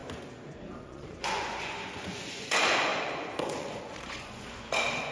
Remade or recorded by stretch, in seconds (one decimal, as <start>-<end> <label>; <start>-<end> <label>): 0.0-0.6 recorded; 0.6-5.1 remade